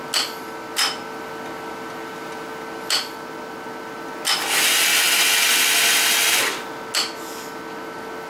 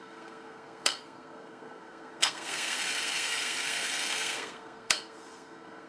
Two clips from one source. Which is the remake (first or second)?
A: second